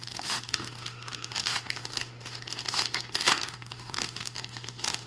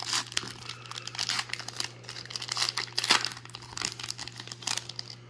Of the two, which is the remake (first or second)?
first